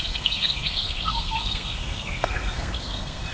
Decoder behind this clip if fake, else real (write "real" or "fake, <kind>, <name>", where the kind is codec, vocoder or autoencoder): fake, codec, SNAC